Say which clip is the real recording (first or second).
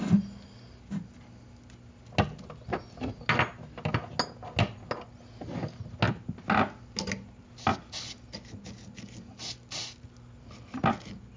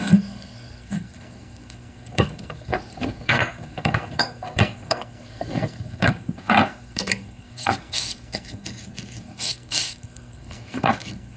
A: first